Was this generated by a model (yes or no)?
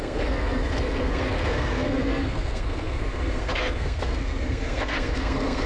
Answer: yes